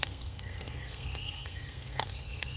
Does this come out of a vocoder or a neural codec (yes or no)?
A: yes